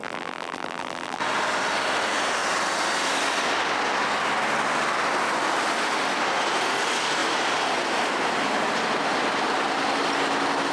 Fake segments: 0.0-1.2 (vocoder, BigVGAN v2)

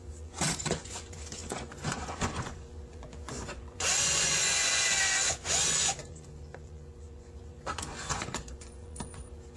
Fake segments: 0.0-9.6 (vocoder, Vocos)

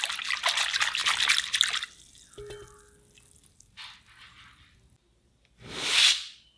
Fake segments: none

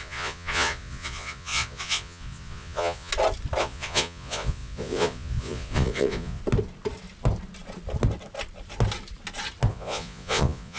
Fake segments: 0.0-3.1 (vocoder, Vocos); 3.6-6.4; 9.7-10.8

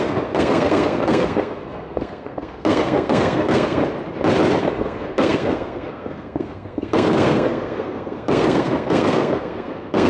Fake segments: 0.0-3.8 (codec, SNAC); 4.6-10.1